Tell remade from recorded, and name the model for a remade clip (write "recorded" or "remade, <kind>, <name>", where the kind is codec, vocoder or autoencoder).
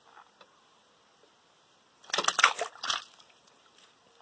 recorded